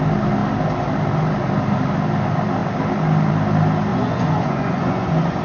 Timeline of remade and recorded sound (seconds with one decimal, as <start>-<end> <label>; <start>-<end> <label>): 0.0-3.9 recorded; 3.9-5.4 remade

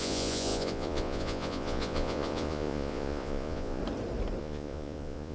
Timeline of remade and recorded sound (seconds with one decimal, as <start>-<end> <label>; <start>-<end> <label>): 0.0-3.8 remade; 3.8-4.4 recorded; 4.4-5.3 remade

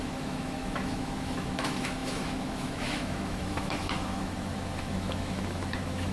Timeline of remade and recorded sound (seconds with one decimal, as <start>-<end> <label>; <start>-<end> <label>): 0.0-6.1 remade